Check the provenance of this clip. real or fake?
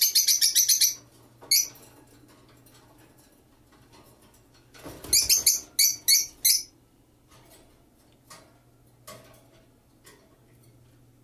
real